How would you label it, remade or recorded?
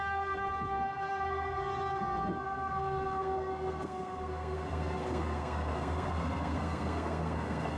remade